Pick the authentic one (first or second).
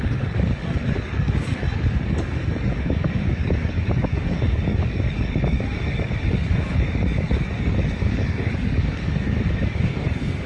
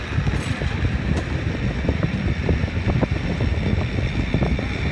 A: second